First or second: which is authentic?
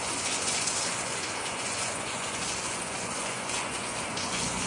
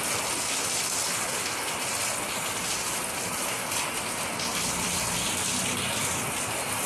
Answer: second